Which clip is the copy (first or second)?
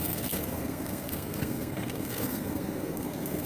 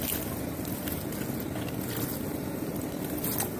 first